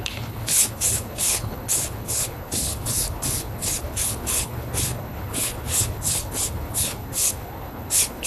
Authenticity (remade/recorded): remade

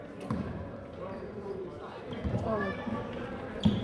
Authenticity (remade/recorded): remade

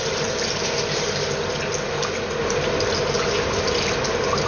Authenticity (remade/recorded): recorded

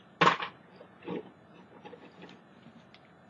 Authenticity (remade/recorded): recorded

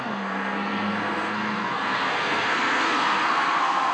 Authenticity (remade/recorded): remade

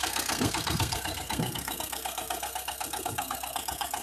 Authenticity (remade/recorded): remade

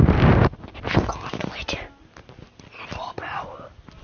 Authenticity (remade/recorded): recorded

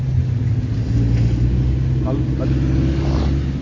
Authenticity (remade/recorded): recorded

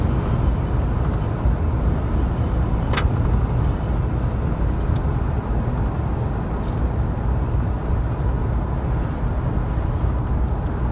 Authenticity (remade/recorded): recorded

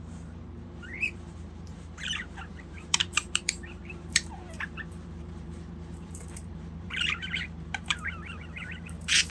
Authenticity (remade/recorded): remade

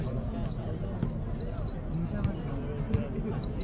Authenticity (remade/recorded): recorded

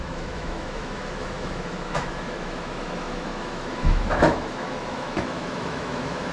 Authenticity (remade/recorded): remade